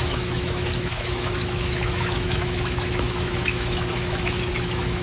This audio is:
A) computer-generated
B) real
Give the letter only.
A